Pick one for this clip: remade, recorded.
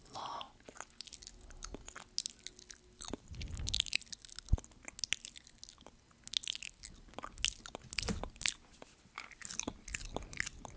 recorded